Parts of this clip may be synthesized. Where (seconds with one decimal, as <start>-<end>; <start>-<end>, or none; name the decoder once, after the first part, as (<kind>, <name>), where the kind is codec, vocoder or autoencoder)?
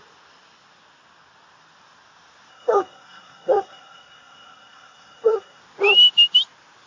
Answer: 2.5-5.6 (codec, SNAC)